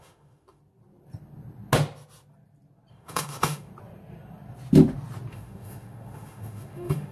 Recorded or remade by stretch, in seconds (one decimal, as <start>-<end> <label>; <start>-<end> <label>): 0.0-0.6 remade; 0.6-2.9 recorded; 2.9-3.7 remade; 3.7-5.3 recorded; 5.3-7.1 remade